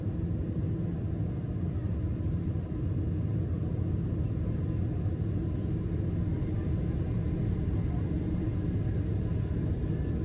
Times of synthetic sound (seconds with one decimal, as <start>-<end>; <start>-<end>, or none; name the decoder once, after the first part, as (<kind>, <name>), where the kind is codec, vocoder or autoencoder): 1.8-2.7 (vocoder, BigVGAN v2)

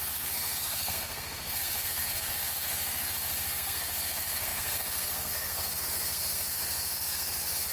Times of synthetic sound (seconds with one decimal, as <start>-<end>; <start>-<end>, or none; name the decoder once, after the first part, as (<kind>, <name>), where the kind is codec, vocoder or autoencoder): 0.0-7.7 (codec, SNAC)

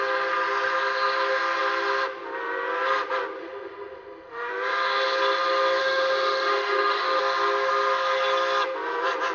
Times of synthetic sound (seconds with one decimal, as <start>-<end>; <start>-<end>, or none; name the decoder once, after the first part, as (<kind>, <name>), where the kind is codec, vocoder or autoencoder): 3.4-4.5 (autoencoder, DAC-VAE); 5.8-7.2

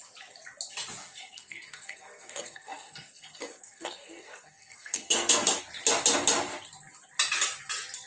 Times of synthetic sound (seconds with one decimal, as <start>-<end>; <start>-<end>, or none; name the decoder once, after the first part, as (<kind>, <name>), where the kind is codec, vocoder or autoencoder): 1.0-5.6 (codec, SNAC)

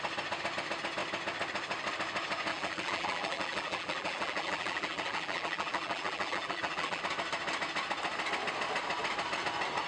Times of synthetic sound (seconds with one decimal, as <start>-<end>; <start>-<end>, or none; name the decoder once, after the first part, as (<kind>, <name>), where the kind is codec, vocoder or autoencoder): 2.5-7.0 (vocoder, BigVGAN v2)

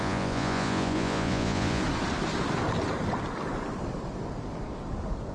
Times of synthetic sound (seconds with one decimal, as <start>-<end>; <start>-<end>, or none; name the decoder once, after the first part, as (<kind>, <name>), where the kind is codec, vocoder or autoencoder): 0.0-1.8 (vocoder, Vocos)

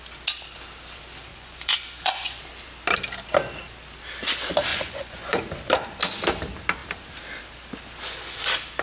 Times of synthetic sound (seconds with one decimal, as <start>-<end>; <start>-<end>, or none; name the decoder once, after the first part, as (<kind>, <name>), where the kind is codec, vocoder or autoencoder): 1.3-2.4 (vocoder, Vocos); 4.7-5.4

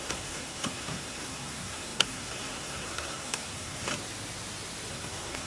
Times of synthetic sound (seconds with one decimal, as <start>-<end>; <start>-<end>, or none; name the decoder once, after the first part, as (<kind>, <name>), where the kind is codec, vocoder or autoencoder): 0.0-3.9 (codec, SNAC); 4.9-5.5